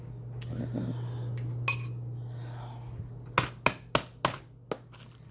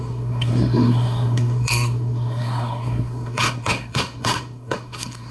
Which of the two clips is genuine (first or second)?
first